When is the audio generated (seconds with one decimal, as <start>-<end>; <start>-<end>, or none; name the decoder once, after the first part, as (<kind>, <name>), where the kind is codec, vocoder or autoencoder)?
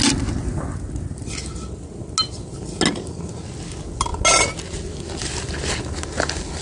none